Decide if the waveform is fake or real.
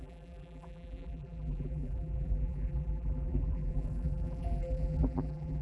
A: fake